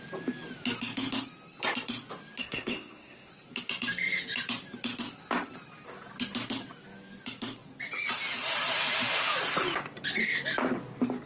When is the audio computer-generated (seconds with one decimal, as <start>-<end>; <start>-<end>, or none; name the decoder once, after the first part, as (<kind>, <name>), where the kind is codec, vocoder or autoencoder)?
2.4-3.3 (codec, SNAC)